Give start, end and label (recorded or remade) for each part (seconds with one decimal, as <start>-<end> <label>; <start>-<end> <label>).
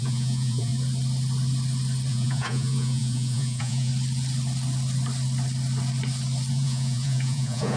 0.0-0.7 remade; 0.7-2.1 recorded; 2.1-3.9 remade; 3.9-6.5 recorded; 6.5-7.8 remade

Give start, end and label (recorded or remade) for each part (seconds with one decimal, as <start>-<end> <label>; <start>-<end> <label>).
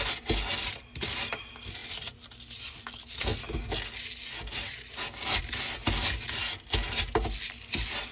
0.0-8.1 recorded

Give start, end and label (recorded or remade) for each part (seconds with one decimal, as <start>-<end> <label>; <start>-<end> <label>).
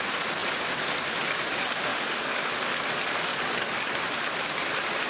0.0-1.9 recorded; 1.9-2.5 remade; 2.5-3.3 recorded; 3.3-3.9 remade; 3.9-5.1 recorded